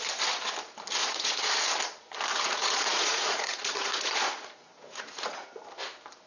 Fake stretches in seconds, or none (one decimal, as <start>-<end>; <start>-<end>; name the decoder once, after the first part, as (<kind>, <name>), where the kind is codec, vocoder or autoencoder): 1.0-1.6 (vocoder, Vocos); 2.3-5.6